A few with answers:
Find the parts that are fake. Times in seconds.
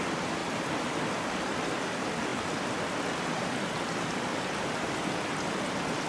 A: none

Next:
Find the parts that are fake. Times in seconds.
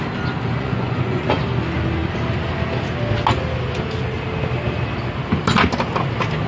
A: 0.5-1.4 (vocoder, Vocos)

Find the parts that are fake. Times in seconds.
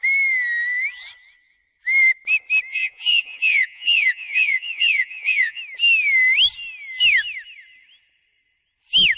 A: 2.7-5.6 (vocoder, Vocos)